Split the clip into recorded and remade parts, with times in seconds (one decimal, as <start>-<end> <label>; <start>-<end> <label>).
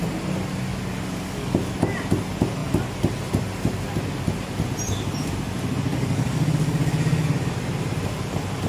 0.0-0.7 recorded; 0.7-1.6 remade; 1.6-5.9 recorded; 5.9-7.5 remade; 7.5-8.7 recorded